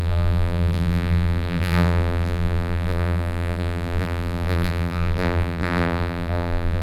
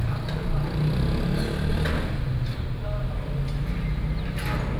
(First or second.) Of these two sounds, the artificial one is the first